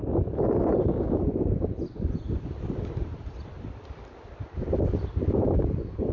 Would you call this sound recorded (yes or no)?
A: yes